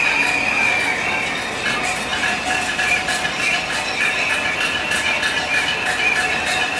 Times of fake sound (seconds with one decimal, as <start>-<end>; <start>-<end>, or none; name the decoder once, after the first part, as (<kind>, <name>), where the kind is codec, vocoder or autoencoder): 2.1-4.3 (vocoder, BigVGAN v2)